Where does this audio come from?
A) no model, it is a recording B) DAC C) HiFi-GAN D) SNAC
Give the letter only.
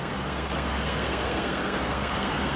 D